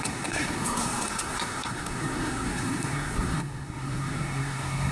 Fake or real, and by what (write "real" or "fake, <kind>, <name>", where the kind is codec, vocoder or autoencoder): fake, codec, SNAC